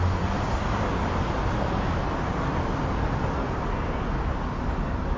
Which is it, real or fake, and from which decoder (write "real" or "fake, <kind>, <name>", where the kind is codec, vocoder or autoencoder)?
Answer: real